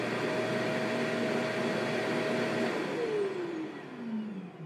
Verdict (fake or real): real